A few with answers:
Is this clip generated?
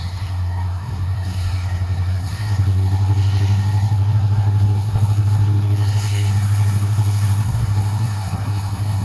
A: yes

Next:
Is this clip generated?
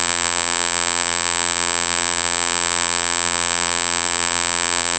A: yes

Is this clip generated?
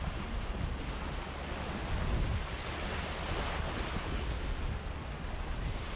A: no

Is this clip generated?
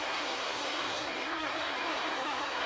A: yes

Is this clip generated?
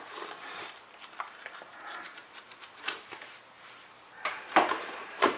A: yes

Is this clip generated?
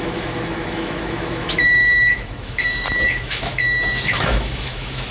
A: yes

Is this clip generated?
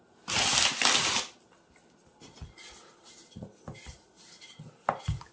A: no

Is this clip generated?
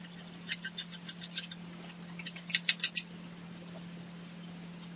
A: no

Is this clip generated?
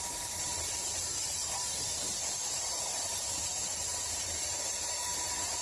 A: yes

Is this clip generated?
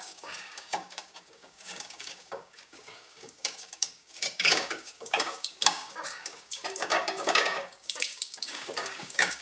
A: yes